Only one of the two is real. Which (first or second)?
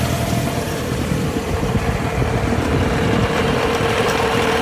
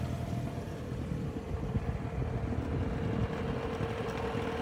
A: second